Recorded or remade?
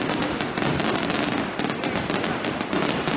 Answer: recorded